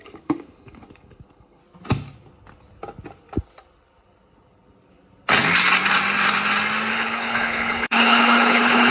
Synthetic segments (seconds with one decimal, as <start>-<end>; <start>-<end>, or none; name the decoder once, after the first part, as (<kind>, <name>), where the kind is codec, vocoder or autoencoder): 0.0-1.6 (codec, HILCodec); 6.9-8.9